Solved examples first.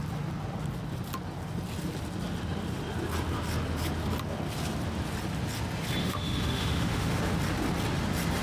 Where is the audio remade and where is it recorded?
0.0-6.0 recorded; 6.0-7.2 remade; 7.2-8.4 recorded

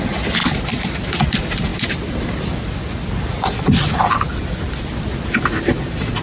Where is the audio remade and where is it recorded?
0.0-0.4 recorded; 0.4-1.1 remade; 1.1-1.7 recorded; 1.7-4.3 remade; 4.3-6.2 recorded

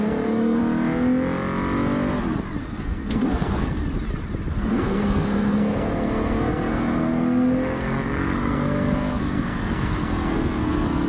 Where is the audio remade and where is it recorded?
0.0-0.6 remade; 0.6-2.6 recorded; 2.6-3.8 remade; 3.8-4.5 recorded; 4.5-11.1 remade

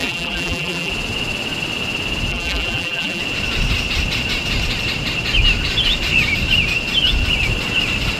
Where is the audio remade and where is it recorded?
0.0-0.9 remade; 0.9-2.3 recorded; 2.3-3.2 remade; 3.2-8.2 recorded

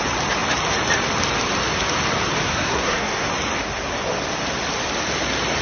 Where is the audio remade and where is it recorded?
0.0-2.4 recorded; 2.4-3.3 remade; 3.3-5.6 recorded